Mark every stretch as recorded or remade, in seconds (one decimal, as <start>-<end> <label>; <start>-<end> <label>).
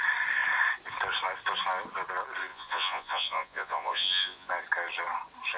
0.0-2.5 recorded; 2.5-4.5 remade; 4.5-5.6 recorded